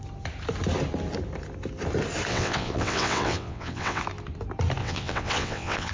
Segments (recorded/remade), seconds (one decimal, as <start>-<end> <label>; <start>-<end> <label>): 0.0-2.3 recorded; 2.3-4.0 remade; 4.0-4.8 recorded; 4.8-5.9 remade